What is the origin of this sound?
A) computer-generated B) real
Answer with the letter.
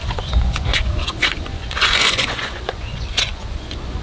A